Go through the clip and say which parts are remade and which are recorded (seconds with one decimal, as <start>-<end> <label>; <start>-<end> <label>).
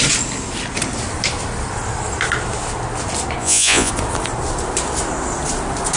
0.0-3.4 recorded; 3.4-3.9 remade; 3.9-6.0 recorded